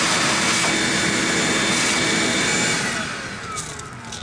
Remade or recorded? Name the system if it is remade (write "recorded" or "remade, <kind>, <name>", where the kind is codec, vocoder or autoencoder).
recorded